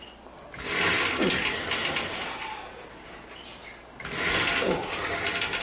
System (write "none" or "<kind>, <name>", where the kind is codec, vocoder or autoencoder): none